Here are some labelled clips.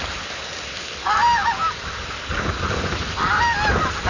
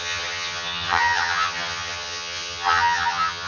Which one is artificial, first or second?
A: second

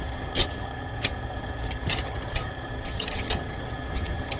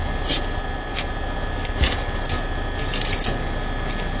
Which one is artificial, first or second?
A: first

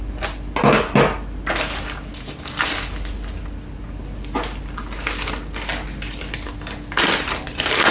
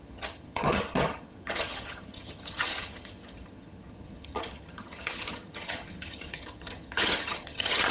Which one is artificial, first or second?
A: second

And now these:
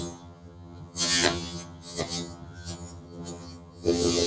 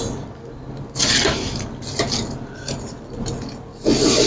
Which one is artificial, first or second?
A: first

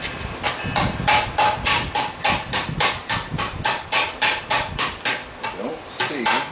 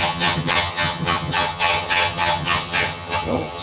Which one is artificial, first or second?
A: second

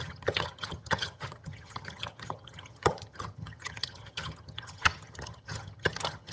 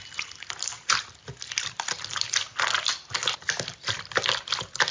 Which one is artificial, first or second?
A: first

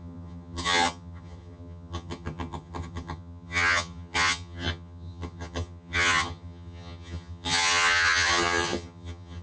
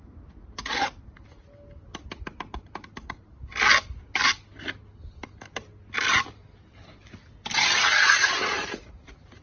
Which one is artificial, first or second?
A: first